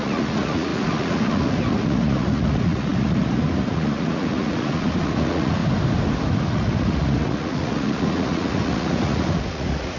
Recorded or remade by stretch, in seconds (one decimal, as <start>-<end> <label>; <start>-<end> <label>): 0.0-5.6 remade; 5.6-6.4 recorded; 6.4-10.0 remade